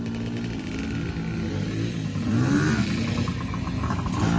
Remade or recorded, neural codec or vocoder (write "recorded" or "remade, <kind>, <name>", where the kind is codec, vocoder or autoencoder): recorded